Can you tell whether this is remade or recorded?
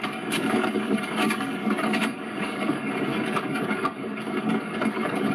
remade